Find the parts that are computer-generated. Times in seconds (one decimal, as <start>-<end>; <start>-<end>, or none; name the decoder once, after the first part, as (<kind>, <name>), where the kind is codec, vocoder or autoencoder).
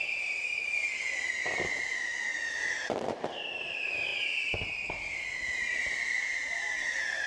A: 0.0-0.8 (vocoder, BigVGAN v2); 1.9-4.1; 4.9-7.3